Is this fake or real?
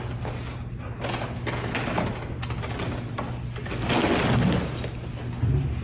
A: real